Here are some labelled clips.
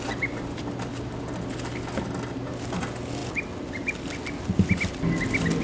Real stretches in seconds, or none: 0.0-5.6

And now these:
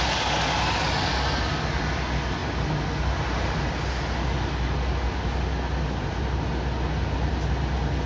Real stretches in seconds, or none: 0.0-8.1

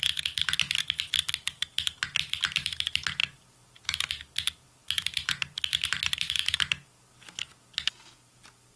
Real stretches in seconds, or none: 0.0-3.2; 6.4-8.8

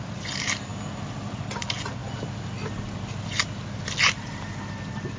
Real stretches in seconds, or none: 0.7-1.4; 2.0-4.0

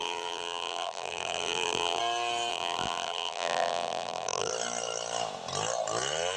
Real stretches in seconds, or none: 2.0-2.5; 4.5-6.4

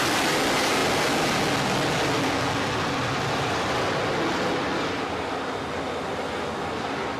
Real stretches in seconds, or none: 0.0-7.2

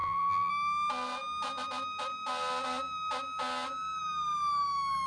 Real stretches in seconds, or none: 0.5-5.1